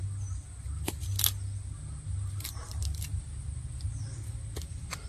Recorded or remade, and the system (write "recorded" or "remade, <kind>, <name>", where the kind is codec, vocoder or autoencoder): recorded